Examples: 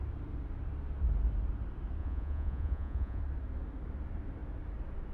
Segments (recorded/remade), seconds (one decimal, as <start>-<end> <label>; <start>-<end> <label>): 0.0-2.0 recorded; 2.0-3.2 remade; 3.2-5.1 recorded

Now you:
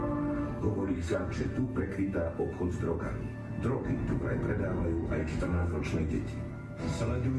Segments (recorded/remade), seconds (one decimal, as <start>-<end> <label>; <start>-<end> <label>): 0.0-0.4 recorded; 0.4-1.8 remade; 1.8-5.2 recorded; 5.2-5.8 remade; 5.8-7.4 recorded

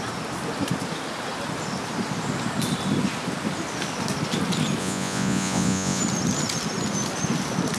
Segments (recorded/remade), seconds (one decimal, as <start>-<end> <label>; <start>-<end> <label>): 0.0-4.8 recorded; 4.8-6.0 remade; 6.0-7.8 recorded